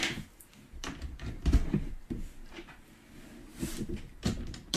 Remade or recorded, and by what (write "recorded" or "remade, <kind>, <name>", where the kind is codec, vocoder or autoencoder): remade, vocoder, BigVGAN v2